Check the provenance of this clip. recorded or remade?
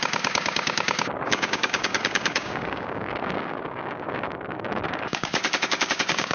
remade